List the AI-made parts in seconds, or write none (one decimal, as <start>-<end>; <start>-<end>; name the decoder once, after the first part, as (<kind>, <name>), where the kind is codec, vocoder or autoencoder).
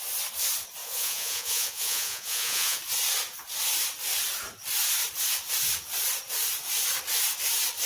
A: 0.8-2.8 (vocoder, Vocos)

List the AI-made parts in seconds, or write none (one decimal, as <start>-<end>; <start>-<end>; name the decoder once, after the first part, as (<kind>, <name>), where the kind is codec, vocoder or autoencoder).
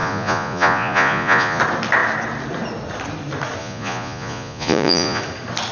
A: 0.0-1.6 (vocoder, Vocos); 3.6-5.2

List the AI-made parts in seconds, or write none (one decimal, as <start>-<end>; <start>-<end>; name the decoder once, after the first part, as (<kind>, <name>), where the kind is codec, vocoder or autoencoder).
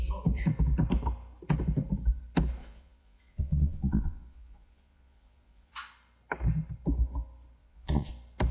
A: 2.6-5.7 (vocoder, Vocos); 7.6-8.1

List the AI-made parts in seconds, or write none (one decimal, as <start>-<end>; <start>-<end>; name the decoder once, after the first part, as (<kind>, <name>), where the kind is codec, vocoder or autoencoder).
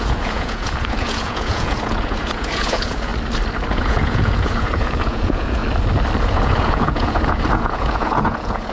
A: 0.0-3.1 (vocoder, Vocos); 3.7-5.6; 6.2-8.7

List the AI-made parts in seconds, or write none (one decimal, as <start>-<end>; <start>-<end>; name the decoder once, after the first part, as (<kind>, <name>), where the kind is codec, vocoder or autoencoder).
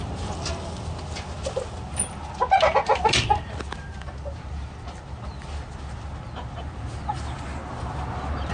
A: none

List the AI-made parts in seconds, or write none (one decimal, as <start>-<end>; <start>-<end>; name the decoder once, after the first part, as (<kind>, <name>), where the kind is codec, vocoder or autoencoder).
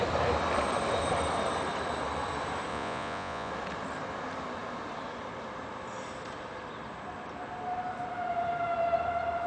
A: 2.7-3.5 (vocoder, Vocos)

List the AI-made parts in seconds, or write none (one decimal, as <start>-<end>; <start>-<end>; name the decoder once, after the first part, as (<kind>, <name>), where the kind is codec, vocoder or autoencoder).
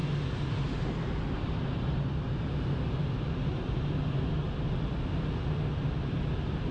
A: none